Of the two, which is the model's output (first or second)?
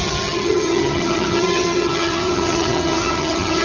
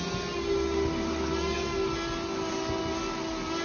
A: first